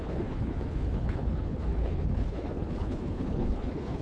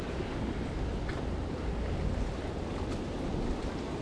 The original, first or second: second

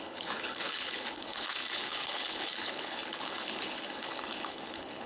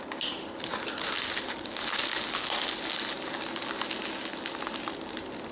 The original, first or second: second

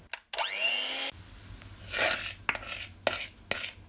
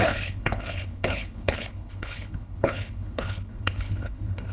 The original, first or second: first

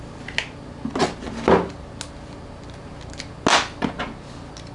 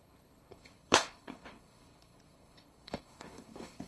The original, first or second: first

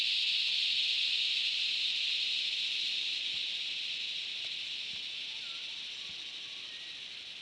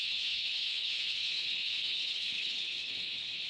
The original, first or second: first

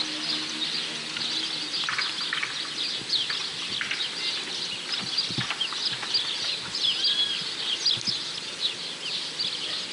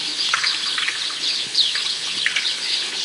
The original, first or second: first